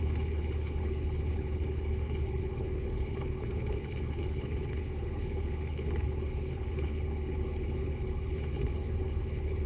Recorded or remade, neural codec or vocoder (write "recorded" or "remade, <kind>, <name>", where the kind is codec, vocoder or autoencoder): remade, codec, HILCodec